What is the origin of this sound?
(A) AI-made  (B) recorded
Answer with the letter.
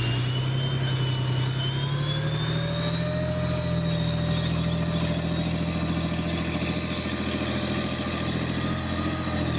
B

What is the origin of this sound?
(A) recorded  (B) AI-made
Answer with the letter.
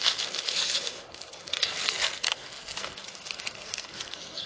B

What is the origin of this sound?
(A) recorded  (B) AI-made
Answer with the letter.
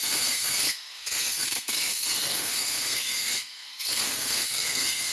B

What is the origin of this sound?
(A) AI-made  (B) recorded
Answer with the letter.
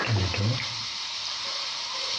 A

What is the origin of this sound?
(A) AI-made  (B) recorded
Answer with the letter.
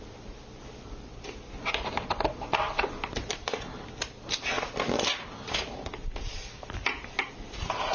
B